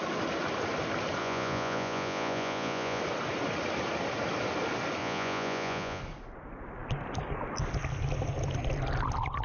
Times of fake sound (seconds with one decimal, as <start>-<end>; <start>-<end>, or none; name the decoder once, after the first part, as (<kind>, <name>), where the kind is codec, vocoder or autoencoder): 1.2-3.0 (vocoder, Vocos); 5.0-6.0